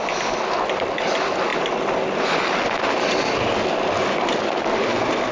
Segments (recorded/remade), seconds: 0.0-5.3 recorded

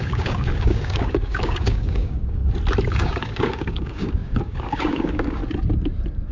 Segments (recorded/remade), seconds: 0.0-2.4 remade; 2.4-2.9 recorded; 2.9-5.4 remade; 5.4-6.3 recorded

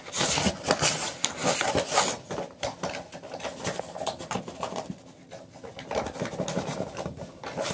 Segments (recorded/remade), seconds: 0.0-7.7 recorded

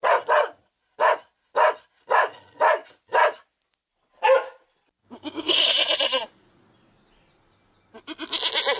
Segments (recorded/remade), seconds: 0.0-5.0 recorded; 5.0-5.7 remade; 5.7-8.8 recorded

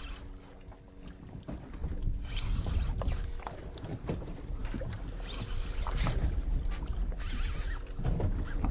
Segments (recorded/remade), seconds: 0.0-8.7 recorded

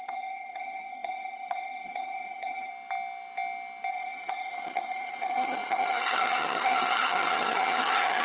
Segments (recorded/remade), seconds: 0.0-2.7 remade; 2.7-3.9 recorded; 3.9-8.2 remade